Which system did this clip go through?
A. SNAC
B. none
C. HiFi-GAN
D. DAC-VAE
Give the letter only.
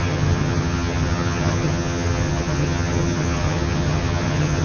C